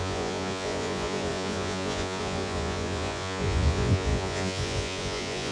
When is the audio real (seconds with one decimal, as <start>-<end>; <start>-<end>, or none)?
none